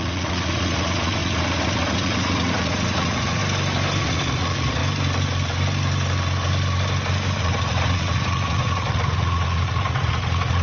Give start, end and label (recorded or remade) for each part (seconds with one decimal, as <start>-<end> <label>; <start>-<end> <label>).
0.0-3.4 remade; 3.4-4.0 recorded; 4.0-4.8 remade; 4.8-7.4 recorded; 7.4-10.6 remade